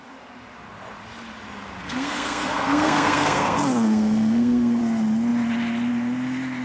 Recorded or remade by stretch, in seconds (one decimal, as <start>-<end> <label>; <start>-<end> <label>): 0.0-1.8 recorded; 1.8-4.8 remade; 4.8-6.6 recorded